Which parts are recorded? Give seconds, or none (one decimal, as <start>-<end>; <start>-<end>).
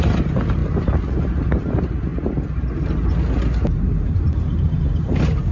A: 0.0-5.5